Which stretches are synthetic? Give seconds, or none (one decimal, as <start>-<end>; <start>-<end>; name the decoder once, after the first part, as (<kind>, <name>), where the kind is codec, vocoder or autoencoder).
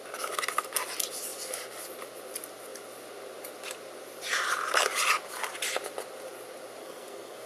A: 6.8-7.5 (codec, SNAC)